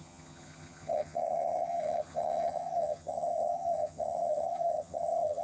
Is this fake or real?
fake